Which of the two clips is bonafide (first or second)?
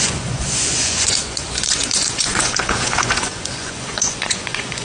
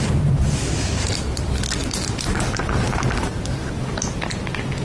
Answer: second